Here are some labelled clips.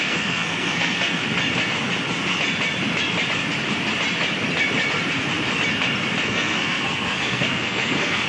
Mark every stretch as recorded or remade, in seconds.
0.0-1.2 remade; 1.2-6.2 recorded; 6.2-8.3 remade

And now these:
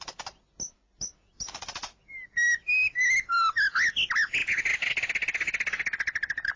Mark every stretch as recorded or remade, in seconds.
0.0-6.6 recorded

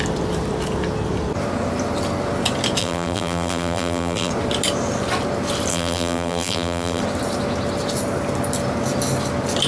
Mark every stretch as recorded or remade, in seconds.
0.0-2.8 recorded; 2.8-4.3 remade; 4.3-5.7 recorded; 5.7-7.0 remade; 7.0-9.7 recorded

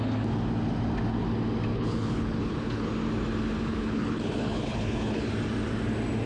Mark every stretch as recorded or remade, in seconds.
0.0-1.7 recorded; 1.7-2.9 remade; 2.9-3.7 recorded; 3.7-5.3 remade; 5.3-6.3 recorded

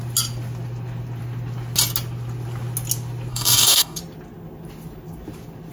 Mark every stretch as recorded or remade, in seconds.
0.0-3.3 recorded; 3.3-4.0 remade; 4.0-5.7 recorded